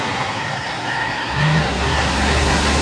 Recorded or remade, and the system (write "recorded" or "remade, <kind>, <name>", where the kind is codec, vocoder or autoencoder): remade, codec, SNAC